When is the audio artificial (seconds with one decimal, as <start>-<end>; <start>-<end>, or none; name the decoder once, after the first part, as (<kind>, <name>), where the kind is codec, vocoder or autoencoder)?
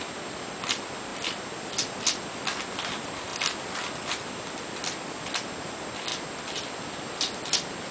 none